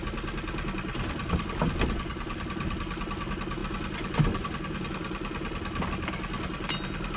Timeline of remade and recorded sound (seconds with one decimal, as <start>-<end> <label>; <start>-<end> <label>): 0.0-7.2 recorded